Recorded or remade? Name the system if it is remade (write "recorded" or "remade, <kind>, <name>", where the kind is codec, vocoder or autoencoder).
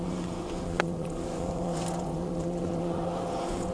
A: remade, vocoder, Vocos